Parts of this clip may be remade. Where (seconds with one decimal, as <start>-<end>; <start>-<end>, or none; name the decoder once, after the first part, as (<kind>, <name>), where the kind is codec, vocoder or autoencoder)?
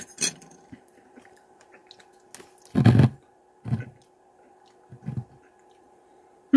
0.0-1.8 (vocoder, BigVGAN v2); 5.8-6.6